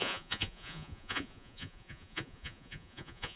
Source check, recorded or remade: remade